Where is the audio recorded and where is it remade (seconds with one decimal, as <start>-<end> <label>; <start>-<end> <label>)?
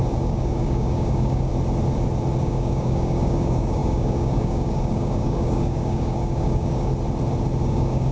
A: 0.0-1.5 remade; 1.5-2.4 recorded; 2.4-6.9 remade; 6.9-7.6 recorded; 7.6-8.1 remade